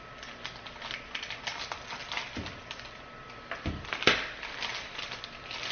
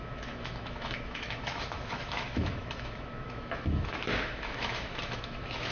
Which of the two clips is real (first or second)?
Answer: first